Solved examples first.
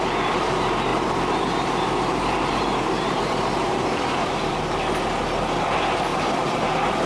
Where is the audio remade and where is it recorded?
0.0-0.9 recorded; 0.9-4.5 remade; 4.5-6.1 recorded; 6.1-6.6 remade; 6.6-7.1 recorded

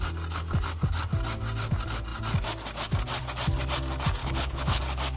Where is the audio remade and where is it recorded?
0.0-4.2 recorded; 4.2-4.8 remade; 4.8-5.2 recorded

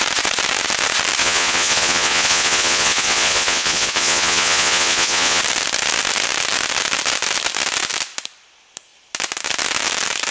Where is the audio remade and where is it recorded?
0.0-1.2 recorded; 1.2-5.4 remade; 5.4-10.3 recorded

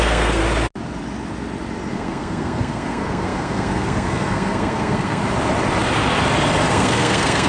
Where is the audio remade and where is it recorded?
0.0-0.4 remade; 0.4-1.9 recorded; 1.9-5.2 remade; 5.2-6.7 recorded; 6.7-7.5 remade

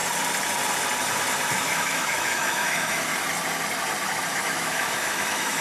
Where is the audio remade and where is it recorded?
0.0-1.6 recorded; 1.6-3.1 remade; 3.1-4.3 recorded; 4.3-5.6 remade

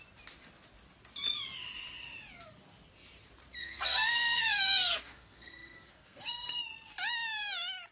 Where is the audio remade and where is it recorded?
0.0-3.6 recorded; 3.6-6.6 remade; 6.6-7.9 recorded